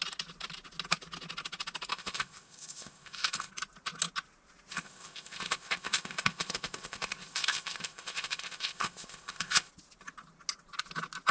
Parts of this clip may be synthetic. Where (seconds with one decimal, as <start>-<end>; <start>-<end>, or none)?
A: 1.9-3.5; 4.7-9.7